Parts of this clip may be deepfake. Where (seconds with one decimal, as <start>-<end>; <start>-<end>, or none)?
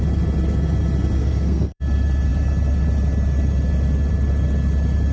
1.2-1.8